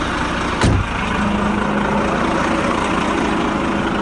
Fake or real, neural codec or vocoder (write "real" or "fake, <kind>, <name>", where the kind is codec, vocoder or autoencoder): real